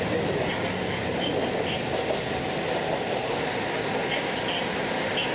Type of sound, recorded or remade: recorded